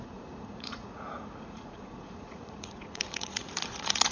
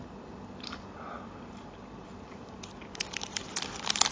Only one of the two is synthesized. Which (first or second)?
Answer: first